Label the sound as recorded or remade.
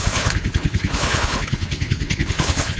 remade